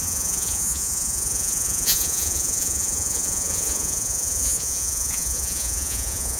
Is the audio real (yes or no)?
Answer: no